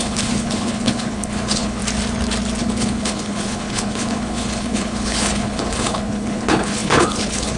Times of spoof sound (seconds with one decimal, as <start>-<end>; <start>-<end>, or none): 0.0-1.8; 2.6-7.6

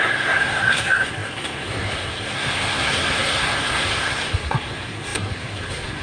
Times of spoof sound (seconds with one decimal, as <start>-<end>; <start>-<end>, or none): 0.0-6.0

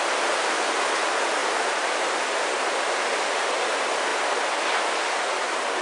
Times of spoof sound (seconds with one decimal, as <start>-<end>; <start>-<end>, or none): none

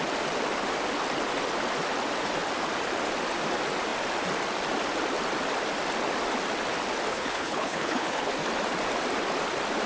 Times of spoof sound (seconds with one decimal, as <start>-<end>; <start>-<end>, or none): 7.1-8.3

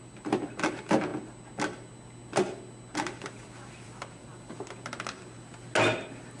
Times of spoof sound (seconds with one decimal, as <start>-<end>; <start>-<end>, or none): 0.0-1.1; 3.2-4.3